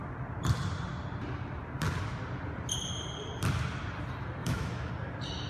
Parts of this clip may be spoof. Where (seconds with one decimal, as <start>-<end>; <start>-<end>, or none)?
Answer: 4.4-4.9